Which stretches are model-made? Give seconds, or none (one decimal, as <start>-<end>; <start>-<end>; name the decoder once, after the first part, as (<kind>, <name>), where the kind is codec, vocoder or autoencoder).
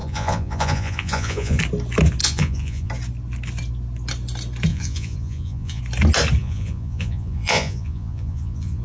0.0-1.6 (vocoder, Vocos); 2.2-2.9; 4.7-5.8; 6.4-8.8